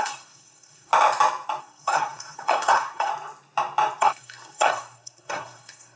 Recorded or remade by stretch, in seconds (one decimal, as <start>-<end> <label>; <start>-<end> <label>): 0.0-0.9 remade; 0.9-1.6 recorded; 1.6-3.1 remade; 3.1-4.0 recorded; 4.0-6.0 remade